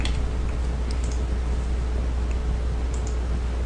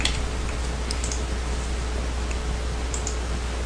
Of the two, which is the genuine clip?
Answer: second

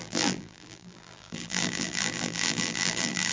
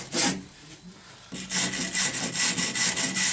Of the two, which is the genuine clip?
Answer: second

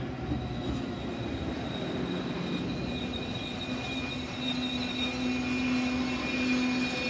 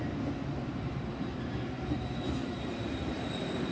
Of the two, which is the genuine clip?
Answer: first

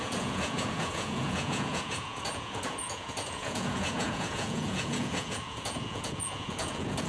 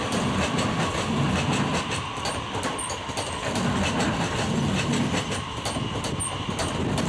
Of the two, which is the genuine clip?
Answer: second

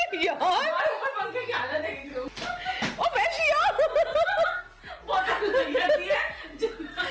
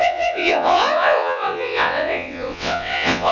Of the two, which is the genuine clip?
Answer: first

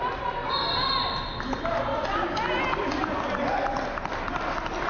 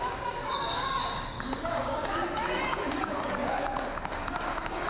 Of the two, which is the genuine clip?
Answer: first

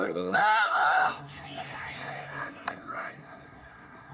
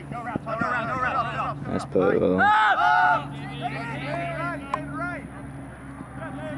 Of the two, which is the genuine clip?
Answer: second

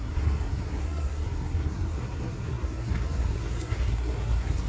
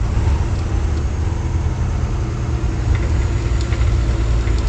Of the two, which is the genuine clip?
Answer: second